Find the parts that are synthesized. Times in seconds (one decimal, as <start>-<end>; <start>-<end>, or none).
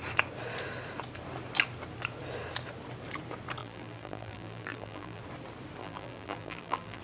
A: 3.6-5.2; 5.8-7.0